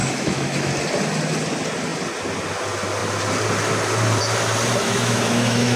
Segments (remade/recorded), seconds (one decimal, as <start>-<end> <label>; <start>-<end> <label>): 0.0-0.7 remade; 0.7-4.8 recorded; 4.8-5.8 remade